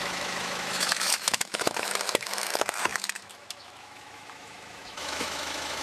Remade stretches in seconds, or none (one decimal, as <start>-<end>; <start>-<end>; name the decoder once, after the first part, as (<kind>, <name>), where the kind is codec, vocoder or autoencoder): 0.0-5.8 (autoencoder, DAC-VAE)